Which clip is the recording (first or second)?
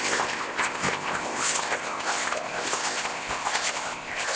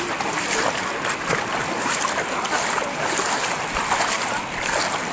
second